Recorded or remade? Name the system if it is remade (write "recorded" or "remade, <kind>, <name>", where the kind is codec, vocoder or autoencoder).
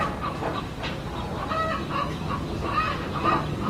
remade, vocoder, BigVGAN v2